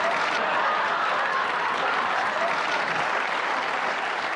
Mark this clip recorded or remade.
recorded